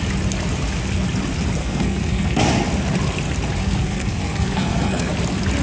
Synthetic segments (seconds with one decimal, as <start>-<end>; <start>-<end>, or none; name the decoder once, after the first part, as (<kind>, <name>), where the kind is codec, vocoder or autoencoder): 1.6-2.4 (codec, SNAC); 3.6-5.1